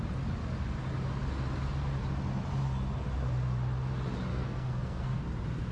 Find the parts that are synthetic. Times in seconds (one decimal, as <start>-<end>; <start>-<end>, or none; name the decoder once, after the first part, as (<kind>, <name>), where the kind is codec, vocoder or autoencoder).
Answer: 4.3-5.2 (codec, SNAC)